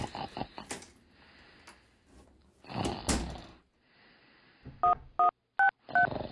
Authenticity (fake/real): real